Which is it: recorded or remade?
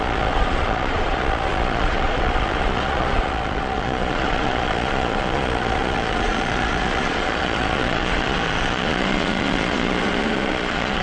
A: remade